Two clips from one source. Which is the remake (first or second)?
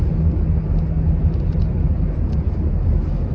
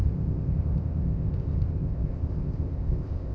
second